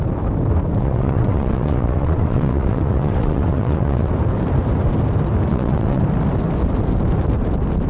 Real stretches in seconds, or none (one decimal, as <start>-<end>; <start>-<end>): 0.0-0.8; 4.1-5.5; 6.0-7.9